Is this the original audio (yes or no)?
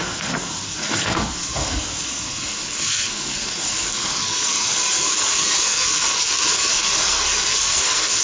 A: no